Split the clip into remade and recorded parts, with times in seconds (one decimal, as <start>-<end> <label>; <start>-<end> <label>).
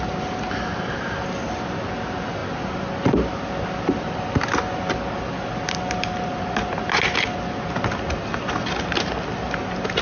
0.0-10.0 recorded